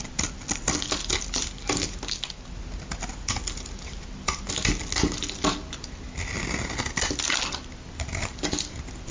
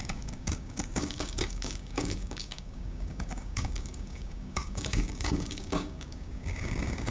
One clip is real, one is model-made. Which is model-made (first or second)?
second